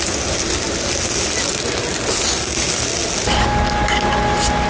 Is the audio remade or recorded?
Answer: recorded